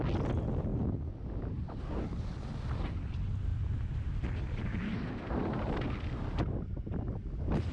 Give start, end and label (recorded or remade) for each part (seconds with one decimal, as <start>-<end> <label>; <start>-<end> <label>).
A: 0.0-7.7 recorded